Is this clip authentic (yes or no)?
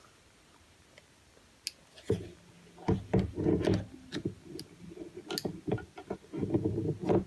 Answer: yes